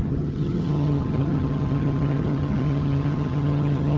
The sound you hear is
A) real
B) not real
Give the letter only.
B